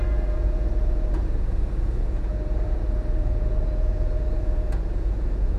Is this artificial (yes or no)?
yes